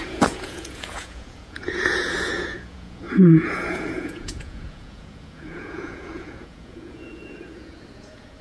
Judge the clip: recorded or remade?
remade